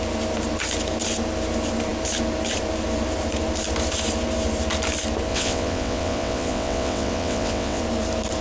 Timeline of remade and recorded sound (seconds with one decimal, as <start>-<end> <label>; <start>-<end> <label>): 0.0-5.3 recorded; 5.3-7.8 remade; 7.8-8.4 recorded